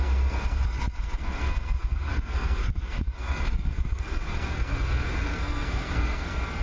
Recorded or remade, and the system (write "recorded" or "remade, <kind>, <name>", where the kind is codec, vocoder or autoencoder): remade, codec, SNAC